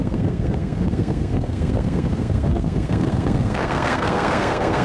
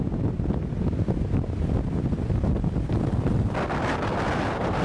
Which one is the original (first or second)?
second